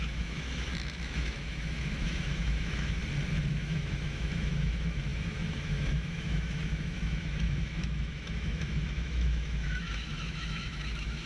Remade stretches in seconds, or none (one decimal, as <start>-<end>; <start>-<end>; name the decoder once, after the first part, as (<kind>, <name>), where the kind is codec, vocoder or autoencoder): 0.0-3.0 (autoencoder, DAC-VAE); 3.5-11.3